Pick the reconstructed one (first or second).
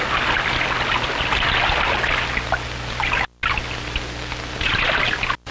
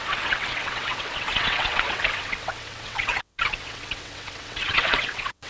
second